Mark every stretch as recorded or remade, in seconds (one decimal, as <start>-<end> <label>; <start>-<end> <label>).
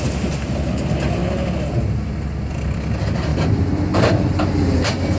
0.0-3.3 recorded; 3.3-4.3 remade; 4.3-5.2 recorded